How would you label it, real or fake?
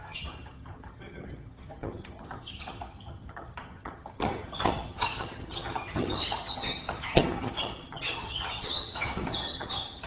fake